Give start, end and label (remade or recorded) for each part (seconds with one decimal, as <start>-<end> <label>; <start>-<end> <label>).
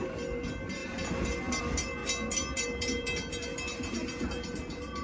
0.0-5.0 recorded